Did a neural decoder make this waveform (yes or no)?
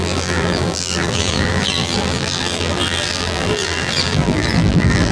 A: yes